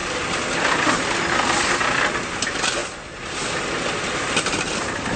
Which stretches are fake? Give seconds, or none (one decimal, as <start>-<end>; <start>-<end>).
none